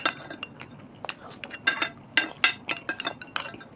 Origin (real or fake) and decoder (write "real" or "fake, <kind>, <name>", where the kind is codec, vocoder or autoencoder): real